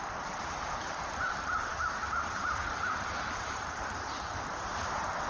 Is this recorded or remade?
remade